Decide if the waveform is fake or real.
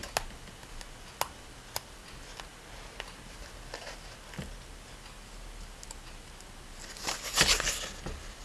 real